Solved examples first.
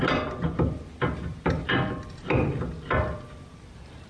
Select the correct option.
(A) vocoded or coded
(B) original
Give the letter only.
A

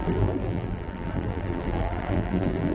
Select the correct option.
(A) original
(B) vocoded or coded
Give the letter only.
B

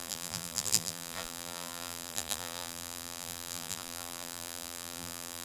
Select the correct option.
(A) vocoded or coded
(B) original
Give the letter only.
A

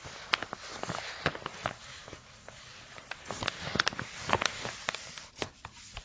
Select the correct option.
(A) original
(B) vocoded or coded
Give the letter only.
A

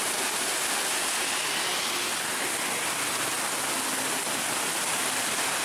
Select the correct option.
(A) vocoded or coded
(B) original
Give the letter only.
B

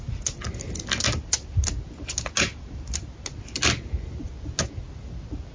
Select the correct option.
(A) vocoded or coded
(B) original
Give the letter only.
B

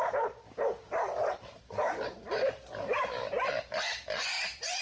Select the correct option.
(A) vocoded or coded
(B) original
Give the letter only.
A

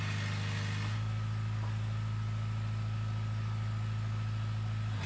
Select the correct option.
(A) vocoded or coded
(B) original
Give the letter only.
B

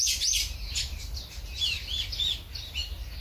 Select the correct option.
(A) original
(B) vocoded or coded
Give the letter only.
A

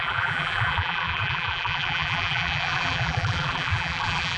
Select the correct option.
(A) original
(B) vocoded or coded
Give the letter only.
B